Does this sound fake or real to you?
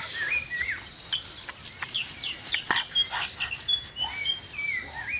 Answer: real